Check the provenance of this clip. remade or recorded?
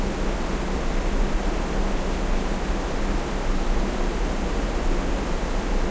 recorded